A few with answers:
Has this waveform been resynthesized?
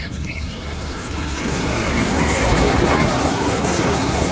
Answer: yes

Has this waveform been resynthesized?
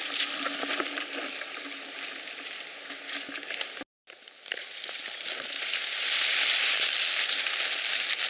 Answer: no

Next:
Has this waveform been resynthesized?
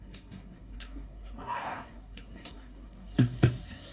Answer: yes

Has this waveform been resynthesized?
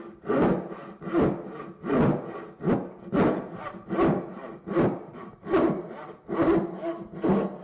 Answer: no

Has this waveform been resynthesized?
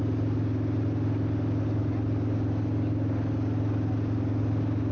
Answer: no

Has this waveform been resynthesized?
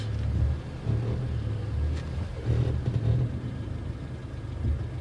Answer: no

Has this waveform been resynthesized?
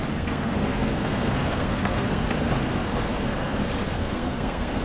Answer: yes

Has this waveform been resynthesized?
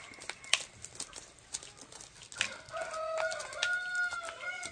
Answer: no